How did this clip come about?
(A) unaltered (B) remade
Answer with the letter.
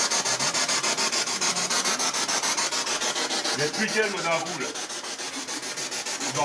A